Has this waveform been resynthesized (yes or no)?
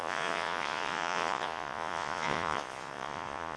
yes